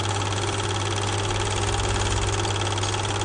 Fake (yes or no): no